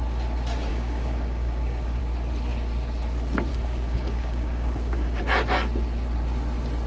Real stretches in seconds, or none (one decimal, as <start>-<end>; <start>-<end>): 0.0-0.7; 2.0-3.5; 5.2-6.9